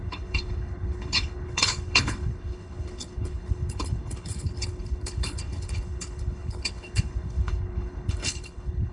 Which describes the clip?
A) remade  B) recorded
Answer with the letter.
A